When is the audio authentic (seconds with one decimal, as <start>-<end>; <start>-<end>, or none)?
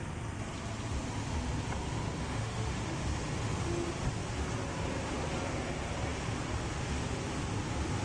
0.0-2.2; 3.0-8.0